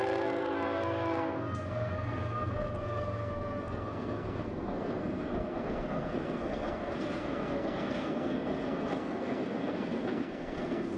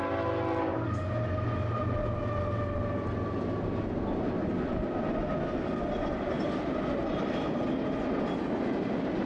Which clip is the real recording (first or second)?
second